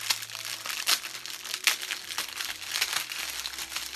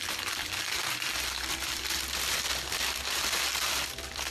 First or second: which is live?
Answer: first